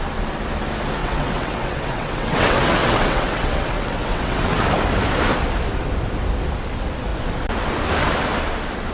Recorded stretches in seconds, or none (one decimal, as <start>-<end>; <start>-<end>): 0.0-1.0; 4.6-8.9